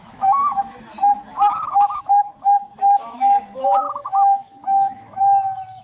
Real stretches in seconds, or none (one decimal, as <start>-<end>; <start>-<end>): none